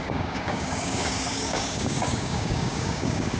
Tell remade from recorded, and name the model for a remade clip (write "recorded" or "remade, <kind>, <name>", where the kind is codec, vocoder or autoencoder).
remade, codec, DAC